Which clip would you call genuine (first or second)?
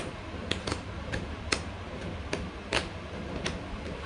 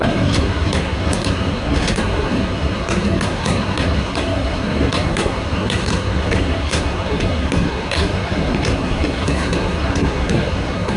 first